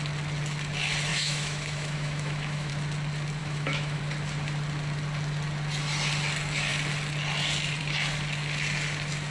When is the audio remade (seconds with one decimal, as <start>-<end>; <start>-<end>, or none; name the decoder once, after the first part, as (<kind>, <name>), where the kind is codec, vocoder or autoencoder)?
1.1-2.7 (autoencoder, DAC-VAE); 3.4-4.0